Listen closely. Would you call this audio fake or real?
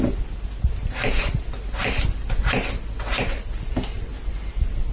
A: real